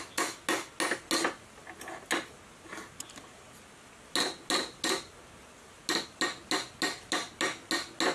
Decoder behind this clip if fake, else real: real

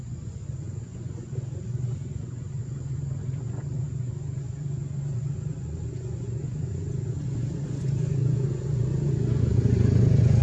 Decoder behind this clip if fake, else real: fake, vocoder, Vocos